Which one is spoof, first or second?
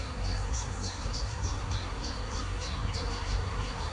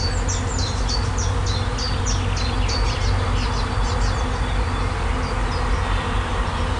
first